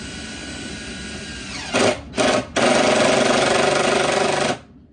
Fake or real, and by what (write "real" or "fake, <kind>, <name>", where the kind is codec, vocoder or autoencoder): real